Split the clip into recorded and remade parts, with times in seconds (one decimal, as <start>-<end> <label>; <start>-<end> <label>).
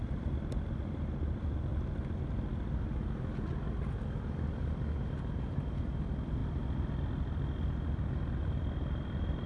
0.0-1.7 remade; 1.7-5.8 recorded; 5.8-6.4 remade; 6.4-8.4 recorded; 8.4-9.5 remade